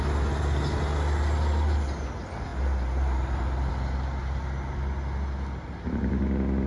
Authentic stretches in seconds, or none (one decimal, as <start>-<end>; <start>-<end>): 0.0-6.7